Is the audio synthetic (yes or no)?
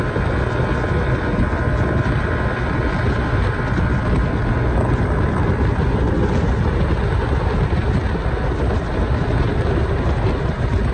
no